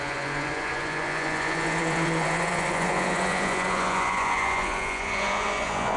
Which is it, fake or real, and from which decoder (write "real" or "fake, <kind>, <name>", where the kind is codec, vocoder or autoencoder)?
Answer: fake, vocoder, Vocos